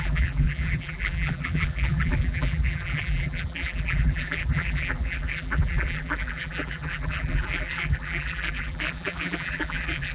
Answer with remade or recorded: remade